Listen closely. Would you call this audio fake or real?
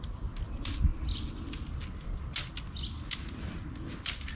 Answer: real